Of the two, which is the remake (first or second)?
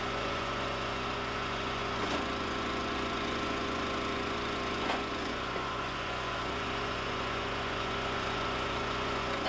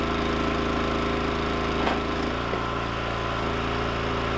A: first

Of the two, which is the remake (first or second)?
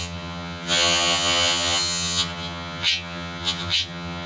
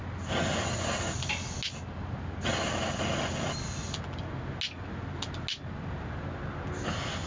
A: first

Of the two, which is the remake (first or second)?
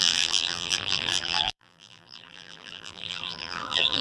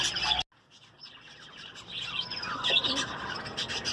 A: first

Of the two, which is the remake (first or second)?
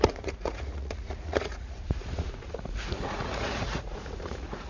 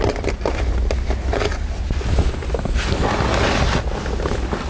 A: first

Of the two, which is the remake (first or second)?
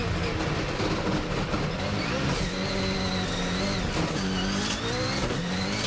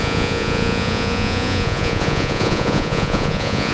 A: second